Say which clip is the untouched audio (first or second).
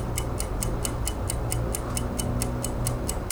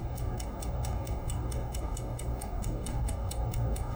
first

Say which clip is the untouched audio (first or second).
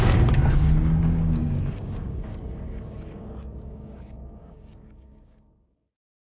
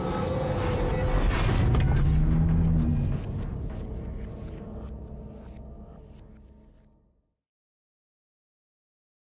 second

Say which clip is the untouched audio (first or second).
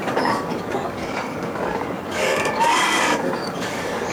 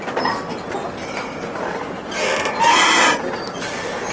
second